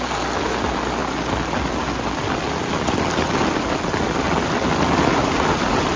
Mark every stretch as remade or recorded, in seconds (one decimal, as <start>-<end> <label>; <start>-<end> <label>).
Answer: 0.0-6.0 recorded